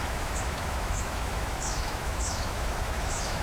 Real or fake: fake